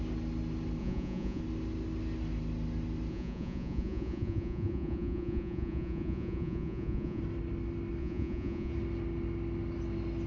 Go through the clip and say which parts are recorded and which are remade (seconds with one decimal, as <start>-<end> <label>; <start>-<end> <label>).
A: 0.0-0.8 recorded; 0.8-1.4 remade; 1.4-3.1 recorded; 3.1-7.2 remade; 7.2-8.0 recorded; 8.0-8.7 remade; 8.7-10.3 recorded